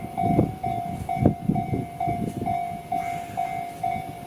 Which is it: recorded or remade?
recorded